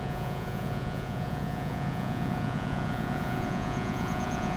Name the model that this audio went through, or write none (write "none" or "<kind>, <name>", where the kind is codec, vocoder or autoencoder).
vocoder, Vocos